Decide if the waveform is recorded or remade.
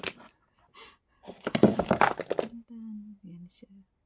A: recorded